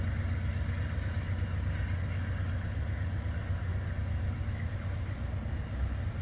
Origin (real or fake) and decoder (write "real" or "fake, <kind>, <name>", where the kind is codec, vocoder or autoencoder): real